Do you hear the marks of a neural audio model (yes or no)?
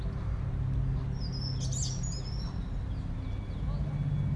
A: no